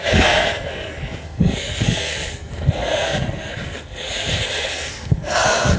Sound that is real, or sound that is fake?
fake